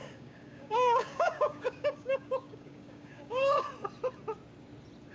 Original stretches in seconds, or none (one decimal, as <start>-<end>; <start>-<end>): 3.7-5.1